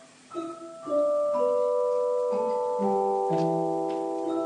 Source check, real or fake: real